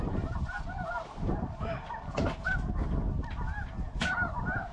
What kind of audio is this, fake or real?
fake